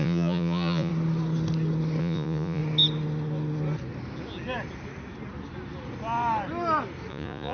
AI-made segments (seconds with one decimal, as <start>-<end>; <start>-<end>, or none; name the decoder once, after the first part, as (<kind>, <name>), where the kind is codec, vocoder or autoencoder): 0.0-0.9 (vocoder, Vocos); 2.0-2.6; 7.1-7.5